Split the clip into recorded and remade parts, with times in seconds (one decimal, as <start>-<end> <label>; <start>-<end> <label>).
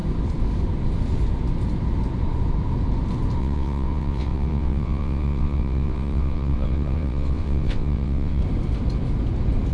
0.0-3.4 recorded; 3.4-8.4 remade; 8.4-9.7 recorded